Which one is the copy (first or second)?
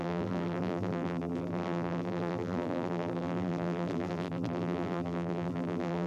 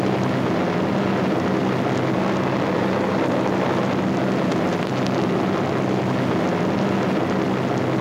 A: first